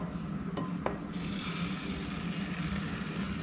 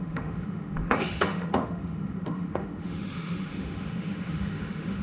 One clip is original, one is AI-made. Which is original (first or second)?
first